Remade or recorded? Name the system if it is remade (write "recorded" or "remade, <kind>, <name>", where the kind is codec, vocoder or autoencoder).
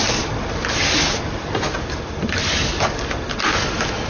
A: recorded